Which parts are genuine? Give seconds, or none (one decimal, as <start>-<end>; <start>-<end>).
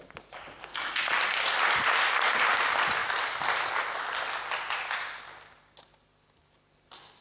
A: 0.0-7.2